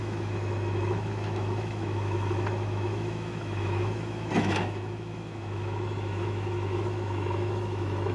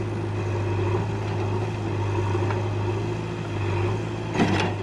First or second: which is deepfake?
first